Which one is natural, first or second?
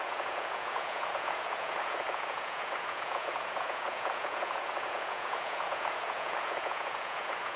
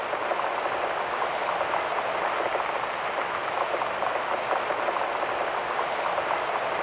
second